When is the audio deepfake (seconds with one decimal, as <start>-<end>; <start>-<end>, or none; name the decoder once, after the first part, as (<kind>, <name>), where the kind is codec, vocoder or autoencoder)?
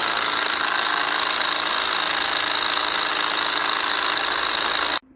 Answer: none